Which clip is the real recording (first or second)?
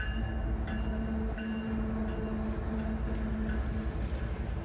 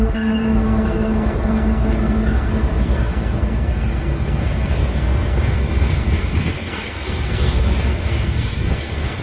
first